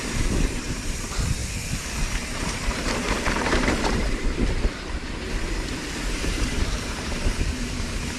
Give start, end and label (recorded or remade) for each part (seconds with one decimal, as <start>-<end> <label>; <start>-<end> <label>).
0.0-8.2 remade

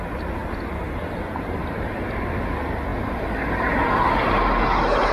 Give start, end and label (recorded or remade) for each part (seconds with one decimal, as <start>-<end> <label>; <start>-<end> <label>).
0.0-5.1 recorded

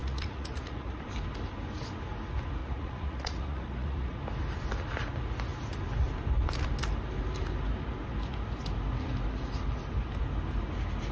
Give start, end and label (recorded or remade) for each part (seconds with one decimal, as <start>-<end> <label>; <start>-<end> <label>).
0.0-1.0 remade; 1.0-2.6 recorded; 2.6-4.2 remade; 4.2-11.1 recorded

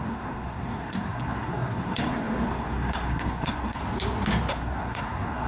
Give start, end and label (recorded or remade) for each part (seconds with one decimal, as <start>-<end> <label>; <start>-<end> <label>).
0.0-3.8 remade; 3.8-4.5 recorded; 4.5-5.5 remade